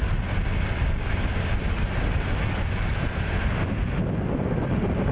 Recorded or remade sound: recorded